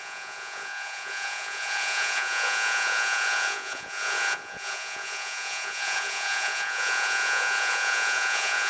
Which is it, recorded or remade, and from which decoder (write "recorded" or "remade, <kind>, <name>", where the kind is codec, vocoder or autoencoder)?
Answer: remade, vocoder, Vocos